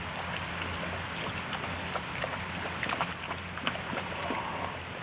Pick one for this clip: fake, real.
real